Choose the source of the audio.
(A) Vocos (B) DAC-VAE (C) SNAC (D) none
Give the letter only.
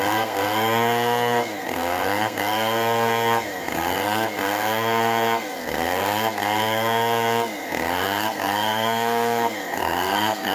C